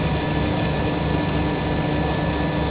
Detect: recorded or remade recorded